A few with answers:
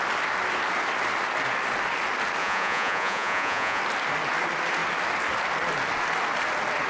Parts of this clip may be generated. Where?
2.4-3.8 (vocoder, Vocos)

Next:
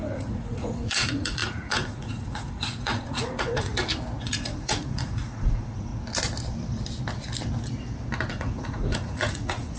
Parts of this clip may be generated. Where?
0.0-3.7 (vocoder, Vocos); 4.2-5.9; 8.3-9.8

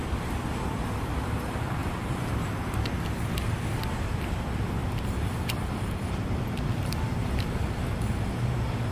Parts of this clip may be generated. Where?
1.8-2.5 (vocoder, BigVGAN v2); 4.8-6.4

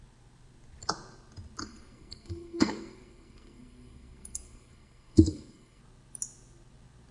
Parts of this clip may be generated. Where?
1.6-5.8 (codec, SNAC)

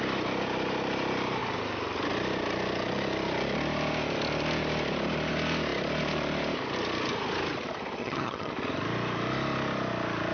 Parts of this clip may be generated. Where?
8.0-8.5 (vocoder, HiFi-GAN)

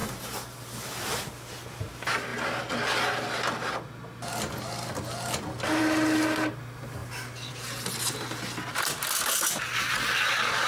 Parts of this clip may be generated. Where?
none

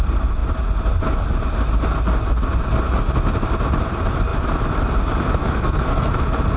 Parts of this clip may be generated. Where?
5.4-6.1 (codec, SNAC)